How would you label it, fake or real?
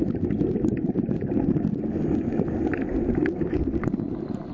real